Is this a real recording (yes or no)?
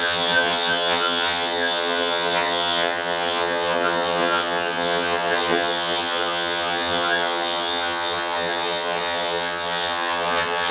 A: no